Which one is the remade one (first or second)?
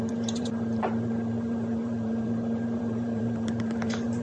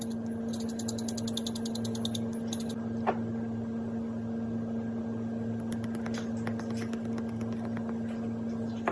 first